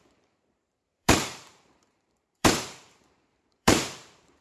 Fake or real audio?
fake